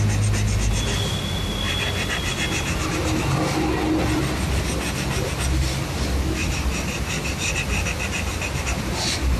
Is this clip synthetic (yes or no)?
no